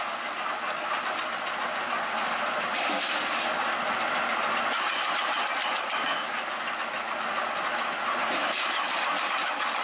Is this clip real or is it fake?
real